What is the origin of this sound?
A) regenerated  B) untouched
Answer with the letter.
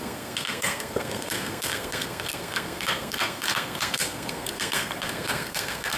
A